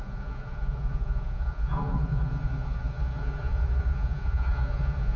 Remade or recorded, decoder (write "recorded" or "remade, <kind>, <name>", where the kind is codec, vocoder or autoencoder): remade, vocoder, Vocos